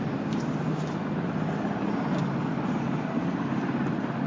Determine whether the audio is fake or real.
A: real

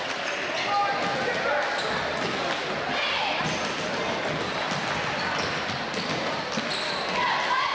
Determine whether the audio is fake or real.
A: real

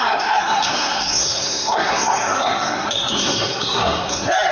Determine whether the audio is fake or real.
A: fake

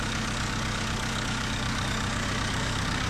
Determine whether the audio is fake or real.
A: fake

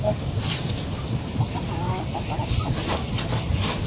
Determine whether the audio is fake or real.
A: real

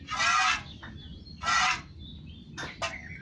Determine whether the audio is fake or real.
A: real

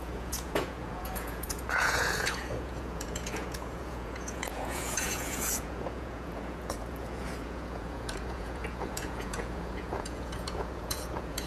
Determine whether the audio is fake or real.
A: fake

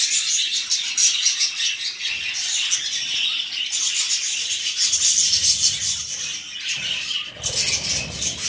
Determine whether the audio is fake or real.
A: real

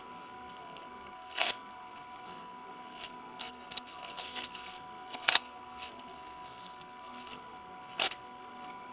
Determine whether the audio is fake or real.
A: fake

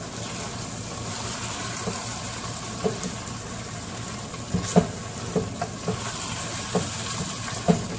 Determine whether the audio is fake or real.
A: real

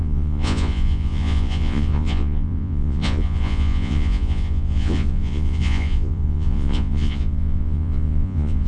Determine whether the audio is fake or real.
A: fake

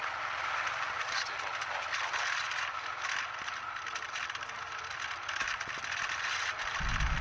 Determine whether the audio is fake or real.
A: real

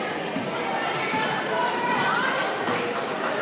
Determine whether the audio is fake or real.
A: fake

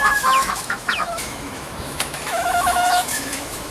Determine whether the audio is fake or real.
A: fake